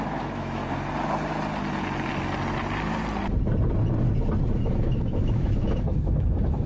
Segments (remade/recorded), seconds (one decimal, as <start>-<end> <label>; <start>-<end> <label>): 0.0-0.6 remade; 0.6-4.6 recorded; 4.6-6.7 remade